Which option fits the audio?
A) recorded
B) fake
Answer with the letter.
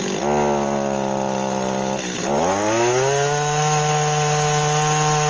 A